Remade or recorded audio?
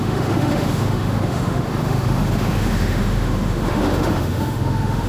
remade